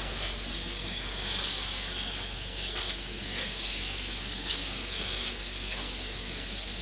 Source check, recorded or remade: remade